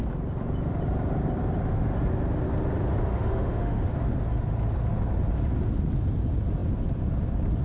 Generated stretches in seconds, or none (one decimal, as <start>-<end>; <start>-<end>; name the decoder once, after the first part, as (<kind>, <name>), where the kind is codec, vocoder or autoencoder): 3.1-3.8 (autoencoder, DAC-VAE)